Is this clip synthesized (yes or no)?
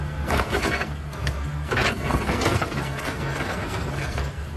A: yes